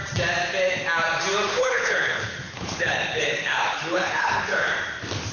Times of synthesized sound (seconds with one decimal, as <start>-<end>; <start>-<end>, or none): 1.5-4.7